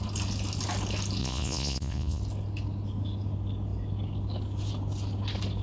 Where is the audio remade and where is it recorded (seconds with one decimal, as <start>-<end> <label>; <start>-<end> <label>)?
0.0-1.2 recorded; 1.2-2.2 remade; 2.2-5.6 recorded